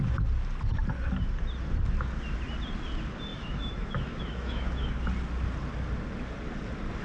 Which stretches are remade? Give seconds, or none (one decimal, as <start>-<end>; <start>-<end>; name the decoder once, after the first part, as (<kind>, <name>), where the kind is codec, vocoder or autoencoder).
3.3-4.9 (autoencoder, DAC-VAE)